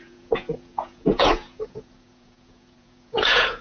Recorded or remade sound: remade